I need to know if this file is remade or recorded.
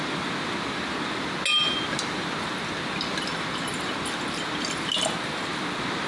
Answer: recorded